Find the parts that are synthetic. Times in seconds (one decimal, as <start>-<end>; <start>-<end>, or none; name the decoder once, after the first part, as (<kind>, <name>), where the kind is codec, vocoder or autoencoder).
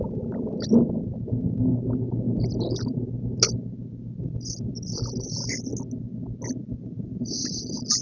0.0-0.7 (vocoder, BigVGAN v2); 4.2-5.7; 6.6-8.0